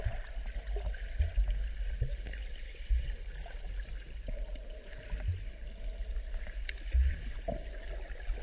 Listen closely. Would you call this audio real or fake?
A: real